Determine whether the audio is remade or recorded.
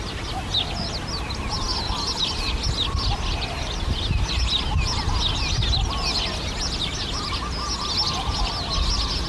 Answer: recorded